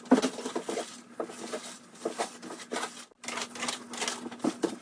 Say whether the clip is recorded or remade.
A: recorded